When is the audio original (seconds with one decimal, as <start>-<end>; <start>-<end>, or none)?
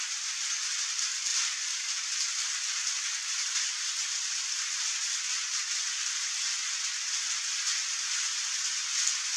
0.0-9.4